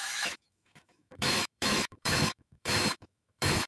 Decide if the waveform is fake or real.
fake